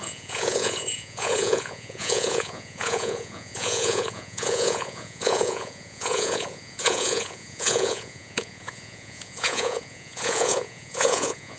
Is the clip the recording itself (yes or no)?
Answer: no